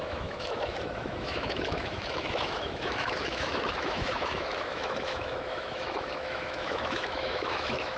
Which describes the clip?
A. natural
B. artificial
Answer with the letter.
B